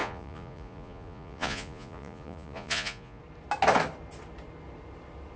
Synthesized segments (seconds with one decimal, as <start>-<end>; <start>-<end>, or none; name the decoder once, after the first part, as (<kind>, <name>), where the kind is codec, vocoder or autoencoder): 0.0-3.2 (vocoder, Vocos)